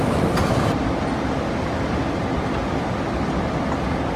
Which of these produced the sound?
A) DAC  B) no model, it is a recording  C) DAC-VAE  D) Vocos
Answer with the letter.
B